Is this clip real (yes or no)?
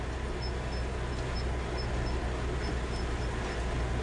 yes